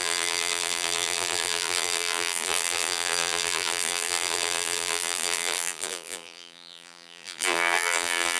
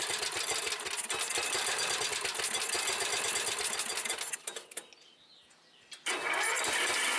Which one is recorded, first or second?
second